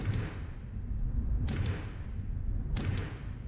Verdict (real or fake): fake